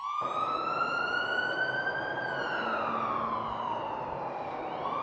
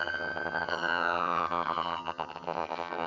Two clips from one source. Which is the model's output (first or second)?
second